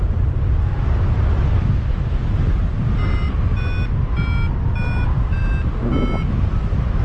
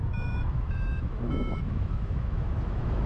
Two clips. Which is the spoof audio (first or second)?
second